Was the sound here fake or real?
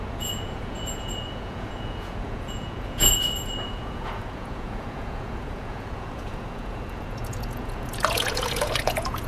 fake